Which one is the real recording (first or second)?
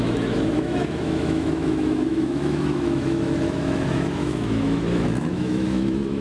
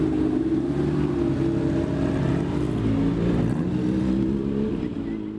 second